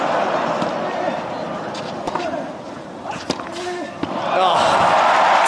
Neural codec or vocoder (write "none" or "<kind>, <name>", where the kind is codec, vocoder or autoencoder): none